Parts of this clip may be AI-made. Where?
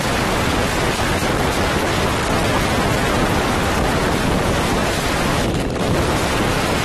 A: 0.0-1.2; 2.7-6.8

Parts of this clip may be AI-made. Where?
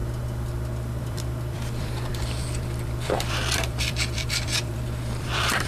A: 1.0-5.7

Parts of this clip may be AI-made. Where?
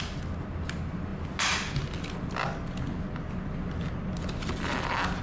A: none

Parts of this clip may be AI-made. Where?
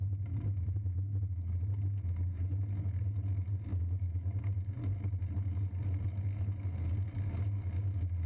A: 3.7-4.4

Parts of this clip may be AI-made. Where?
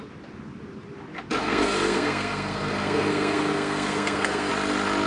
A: 1.4-4.5